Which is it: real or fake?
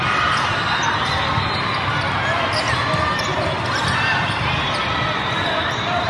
real